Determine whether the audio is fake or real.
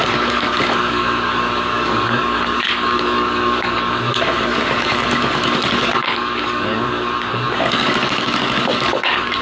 fake